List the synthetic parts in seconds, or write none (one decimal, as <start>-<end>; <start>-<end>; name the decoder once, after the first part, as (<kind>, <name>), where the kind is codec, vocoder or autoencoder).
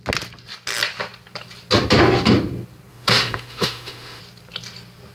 2.9-4.2 (autoencoder, DAC-VAE)